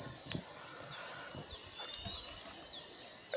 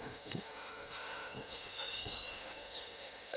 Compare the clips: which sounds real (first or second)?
first